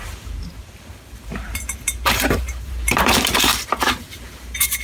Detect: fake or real fake